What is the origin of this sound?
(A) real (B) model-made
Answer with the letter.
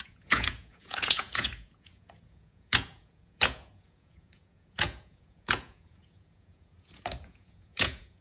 B